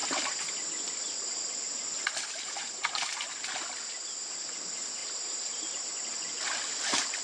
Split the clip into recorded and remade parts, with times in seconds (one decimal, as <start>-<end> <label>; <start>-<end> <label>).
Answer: 0.0-5.0 recorded; 5.0-6.0 remade; 6.0-7.2 recorded